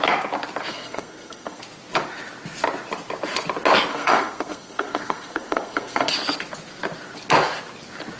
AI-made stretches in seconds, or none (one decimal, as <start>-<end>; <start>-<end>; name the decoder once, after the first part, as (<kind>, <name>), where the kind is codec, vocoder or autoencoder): 0.7-1.6 (codec, SNAC); 3.9-6.1